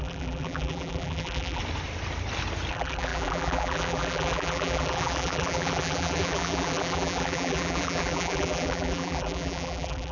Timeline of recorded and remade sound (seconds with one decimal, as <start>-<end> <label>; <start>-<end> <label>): 0.0-1.6 remade; 1.6-2.7 recorded; 2.7-10.1 remade